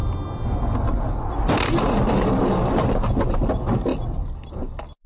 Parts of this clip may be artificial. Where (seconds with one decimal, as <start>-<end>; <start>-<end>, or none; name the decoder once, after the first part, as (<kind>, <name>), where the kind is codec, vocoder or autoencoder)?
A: none

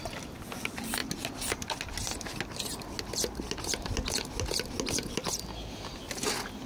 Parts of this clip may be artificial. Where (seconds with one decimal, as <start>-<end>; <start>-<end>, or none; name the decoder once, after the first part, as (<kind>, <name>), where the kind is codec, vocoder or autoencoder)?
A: none

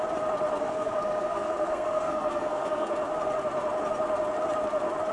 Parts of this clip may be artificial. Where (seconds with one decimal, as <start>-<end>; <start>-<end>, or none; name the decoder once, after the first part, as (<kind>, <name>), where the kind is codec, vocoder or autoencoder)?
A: 0.6-2.9 (codec, SNAC)

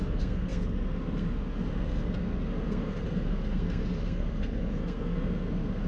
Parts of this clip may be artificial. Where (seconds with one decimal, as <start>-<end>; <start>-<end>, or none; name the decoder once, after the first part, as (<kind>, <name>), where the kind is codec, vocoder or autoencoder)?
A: 0.0-5.9 (codec, SNAC)